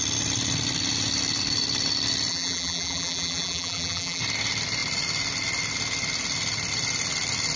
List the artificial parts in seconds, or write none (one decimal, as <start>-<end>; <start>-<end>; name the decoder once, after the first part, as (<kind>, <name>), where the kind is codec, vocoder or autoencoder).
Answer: 2.3-4.2 (vocoder, BigVGAN v2)